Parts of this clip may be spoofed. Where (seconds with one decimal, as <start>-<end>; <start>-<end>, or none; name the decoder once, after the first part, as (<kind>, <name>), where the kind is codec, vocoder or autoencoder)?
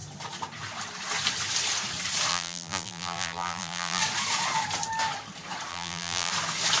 2.3-4.0 (vocoder, BigVGAN v2); 5.7-6.3